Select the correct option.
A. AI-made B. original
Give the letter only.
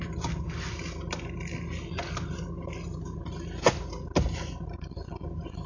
B